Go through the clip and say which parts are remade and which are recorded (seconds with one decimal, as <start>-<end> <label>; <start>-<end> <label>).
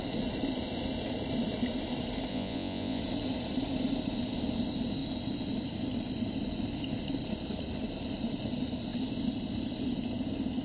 0.0-2.3 recorded; 2.3-3.0 remade; 3.0-10.6 recorded